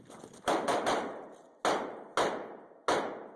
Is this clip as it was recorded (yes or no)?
yes